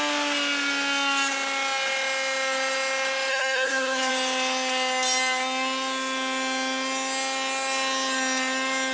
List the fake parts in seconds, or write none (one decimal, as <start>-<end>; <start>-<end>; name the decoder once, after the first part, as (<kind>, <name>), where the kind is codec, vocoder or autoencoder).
3.3-4.1 (codec, SNAC)